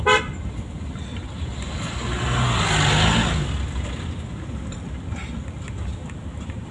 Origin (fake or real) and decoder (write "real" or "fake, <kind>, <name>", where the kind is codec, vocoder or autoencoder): real